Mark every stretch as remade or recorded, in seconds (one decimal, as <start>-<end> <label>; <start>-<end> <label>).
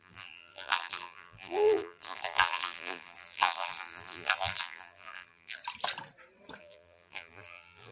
0.0-5.6 remade; 5.6-6.6 recorded; 6.6-7.9 remade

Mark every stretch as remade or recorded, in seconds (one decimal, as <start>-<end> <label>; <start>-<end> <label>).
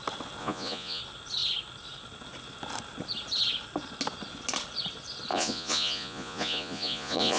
0.0-0.4 recorded; 0.4-1.0 remade; 1.0-5.3 recorded; 5.3-7.4 remade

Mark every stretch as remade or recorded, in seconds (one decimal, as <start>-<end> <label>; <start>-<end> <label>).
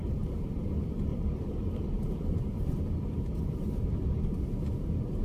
0.0-0.5 remade; 0.5-1.1 recorded; 1.1-4.2 remade; 4.2-5.2 recorded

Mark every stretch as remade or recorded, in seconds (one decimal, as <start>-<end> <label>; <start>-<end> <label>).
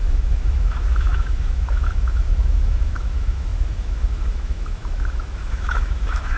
0.0-6.4 remade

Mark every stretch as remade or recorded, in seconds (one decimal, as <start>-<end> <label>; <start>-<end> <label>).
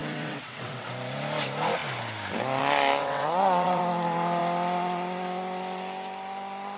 0.0-0.9 remade; 0.9-3.0 recorded; 3.0-3.8 remade; 3.8-6.8 recorded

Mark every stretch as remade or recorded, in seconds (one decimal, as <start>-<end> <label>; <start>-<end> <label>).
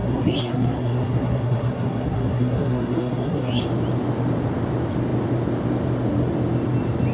0.0-3.6 remade; 3.6-7.1 recorded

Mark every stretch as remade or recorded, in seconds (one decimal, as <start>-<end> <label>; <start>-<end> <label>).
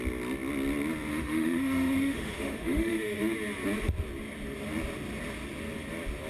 0.0-1.1 recorded; 1.1-3.2 remade; 3.2-6.3 recorded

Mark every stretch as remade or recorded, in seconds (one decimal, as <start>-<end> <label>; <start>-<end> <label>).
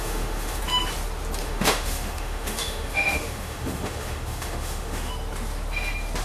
0.0-0.6 remade; 0.6-1.4 recorded; 1.4-5.1 remade; 5.1-6.2 recorded